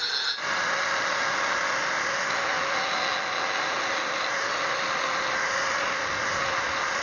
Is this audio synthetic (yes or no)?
no